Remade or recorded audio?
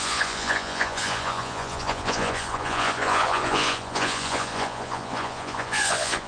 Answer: remade